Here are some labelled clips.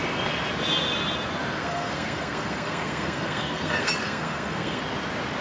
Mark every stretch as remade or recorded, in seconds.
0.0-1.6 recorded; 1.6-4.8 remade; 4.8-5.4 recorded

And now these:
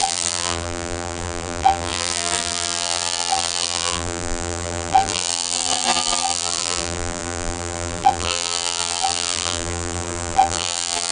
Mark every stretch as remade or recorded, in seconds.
0.0-11.1 remade

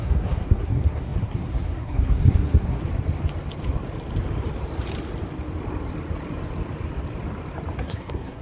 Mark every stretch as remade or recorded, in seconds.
0.0-2.8 remade; 2.8-7.8 recorded; 7.8-8.4 remade

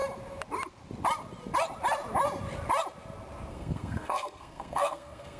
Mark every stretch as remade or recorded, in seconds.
0.0-3.5 recorded; 3.5-5.4 remade

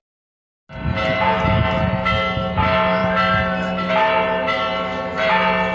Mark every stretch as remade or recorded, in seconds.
0.0-0.9 recorded; 0.9-1.4 remade; 1.4-5.7 recorded

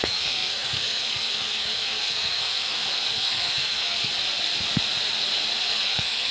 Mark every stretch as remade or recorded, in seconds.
0.0-4.1 remade; 4.1-5.6 recorded; 5.6-6.3 remade

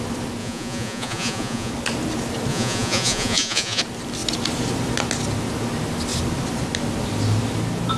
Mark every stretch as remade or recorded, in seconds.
0.0-0.4 recorded; 0.4-1.7 remade; 1.7-2.5 recorded; 2.5-3.8 remade; 3.8-8.0 recorded

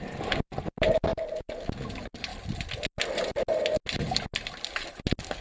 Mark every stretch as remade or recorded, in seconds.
0.0-5.4 recorded